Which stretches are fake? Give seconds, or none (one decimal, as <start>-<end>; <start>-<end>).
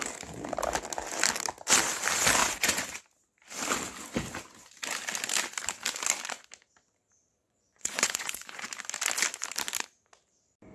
2.4-3.0; 7.4-8.7